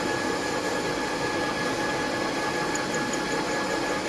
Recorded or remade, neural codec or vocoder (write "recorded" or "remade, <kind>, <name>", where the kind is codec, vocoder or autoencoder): recorded